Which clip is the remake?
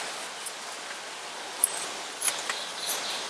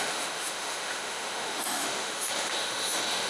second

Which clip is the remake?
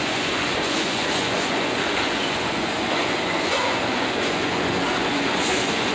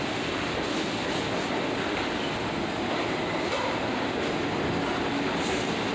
first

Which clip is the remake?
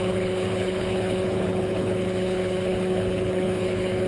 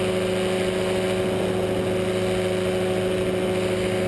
first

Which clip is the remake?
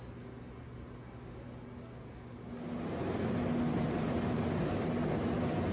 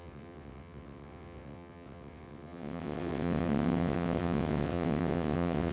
second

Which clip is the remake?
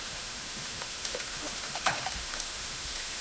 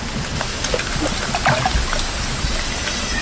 first